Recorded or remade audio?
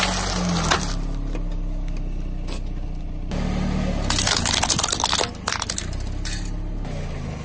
recorded